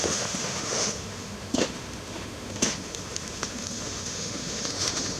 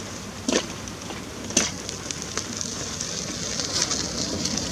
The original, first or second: second